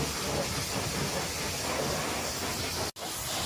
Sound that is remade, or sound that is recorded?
recorded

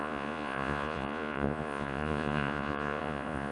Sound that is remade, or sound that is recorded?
remade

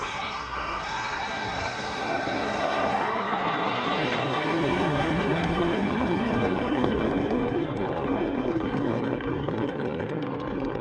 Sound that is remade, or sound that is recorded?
remade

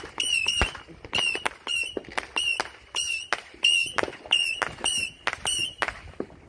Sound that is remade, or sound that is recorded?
recorded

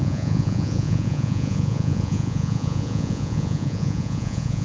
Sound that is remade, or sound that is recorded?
remade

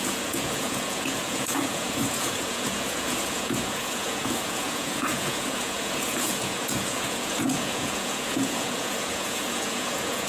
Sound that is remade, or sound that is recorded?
remade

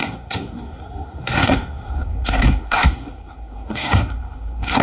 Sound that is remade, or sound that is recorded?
remade